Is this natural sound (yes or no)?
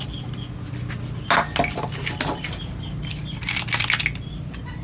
yes